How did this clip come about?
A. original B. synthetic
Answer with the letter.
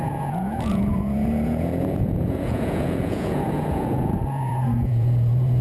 B